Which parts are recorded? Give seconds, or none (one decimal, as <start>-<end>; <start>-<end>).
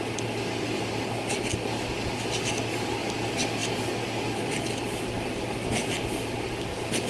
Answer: 0.0-7.1